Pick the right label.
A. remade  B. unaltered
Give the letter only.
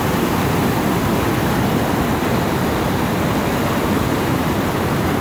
B